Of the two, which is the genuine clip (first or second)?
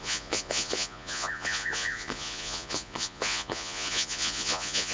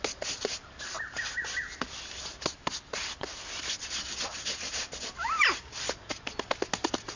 second